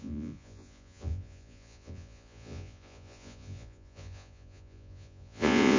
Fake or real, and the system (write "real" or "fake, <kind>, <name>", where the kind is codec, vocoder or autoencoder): fake, vocoder, Vocos